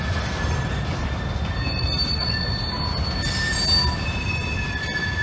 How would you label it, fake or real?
real